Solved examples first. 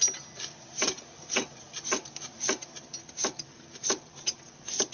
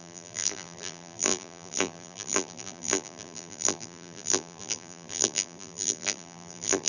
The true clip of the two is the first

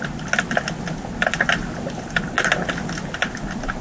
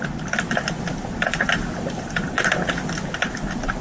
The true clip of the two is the first